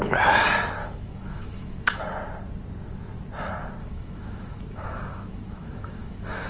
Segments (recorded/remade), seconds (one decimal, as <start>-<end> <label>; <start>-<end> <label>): 0.0-0.8 recorded; 0.8-2.0 remade; 2.0-3.8 recorded; 3.8-6.5 remade